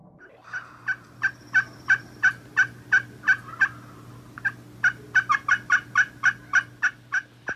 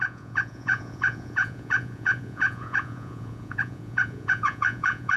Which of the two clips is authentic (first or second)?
first